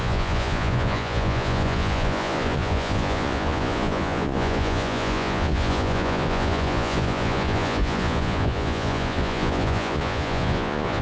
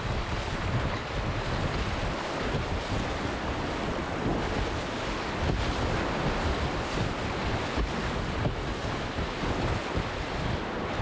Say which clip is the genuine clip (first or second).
second